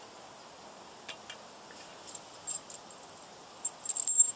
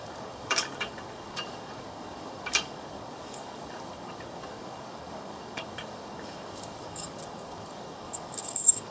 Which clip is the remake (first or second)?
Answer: second